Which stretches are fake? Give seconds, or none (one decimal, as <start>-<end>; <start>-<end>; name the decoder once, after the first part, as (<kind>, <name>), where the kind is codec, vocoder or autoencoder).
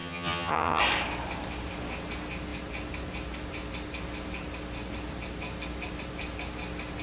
0.0-0.8 (vocoder, HiFi-GAN)